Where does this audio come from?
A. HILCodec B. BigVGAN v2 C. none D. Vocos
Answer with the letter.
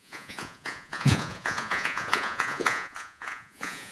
D